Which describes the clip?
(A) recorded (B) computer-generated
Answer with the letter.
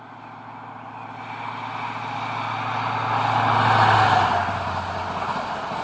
A